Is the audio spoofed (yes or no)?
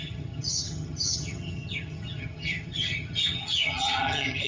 yes